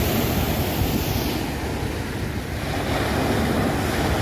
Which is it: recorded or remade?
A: recorded